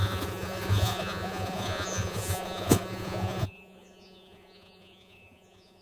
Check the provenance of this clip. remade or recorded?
remade